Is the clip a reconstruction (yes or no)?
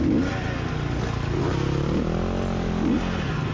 no